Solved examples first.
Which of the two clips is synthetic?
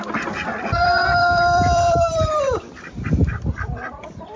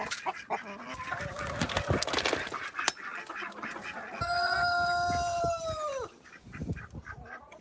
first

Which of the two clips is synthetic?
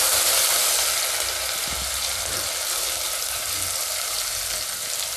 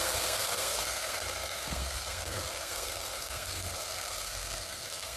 second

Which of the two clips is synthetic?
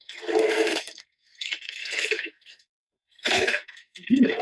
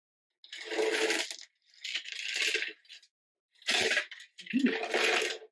first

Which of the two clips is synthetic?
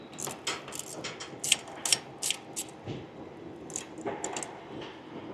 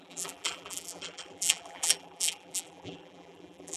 second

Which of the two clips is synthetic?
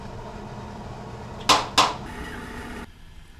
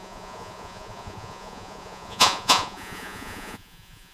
second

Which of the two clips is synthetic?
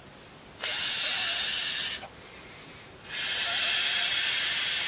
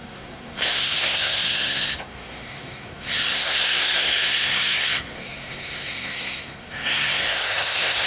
second